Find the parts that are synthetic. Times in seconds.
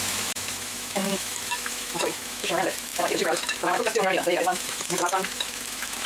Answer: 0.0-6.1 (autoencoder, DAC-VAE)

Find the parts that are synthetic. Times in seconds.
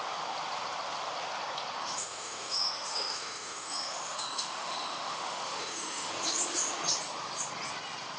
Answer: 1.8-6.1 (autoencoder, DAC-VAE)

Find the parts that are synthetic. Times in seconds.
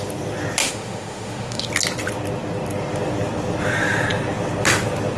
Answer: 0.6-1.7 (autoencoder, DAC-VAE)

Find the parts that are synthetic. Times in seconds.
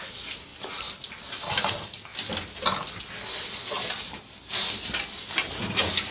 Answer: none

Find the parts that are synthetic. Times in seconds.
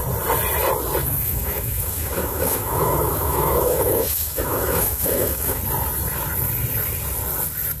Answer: 1.0-5.6 (autoencoder, DAC-VAE)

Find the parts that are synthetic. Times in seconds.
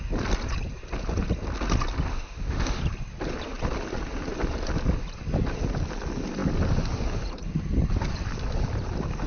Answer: 2.1-2.8 (autoencoder, DAC-VAE)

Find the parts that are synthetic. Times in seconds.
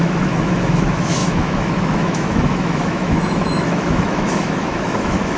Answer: 0.0-5.4 (autoencoder, DAC-VAE)